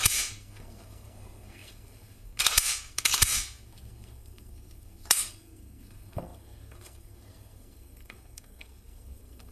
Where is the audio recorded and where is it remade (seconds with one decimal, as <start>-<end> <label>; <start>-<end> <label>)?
0.0-9.5 remade